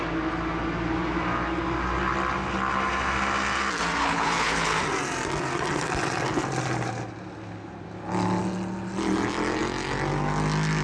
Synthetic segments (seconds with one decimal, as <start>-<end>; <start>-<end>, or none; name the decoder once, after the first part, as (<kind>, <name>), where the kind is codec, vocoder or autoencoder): 4.0-4.8 (codec, HILCodec)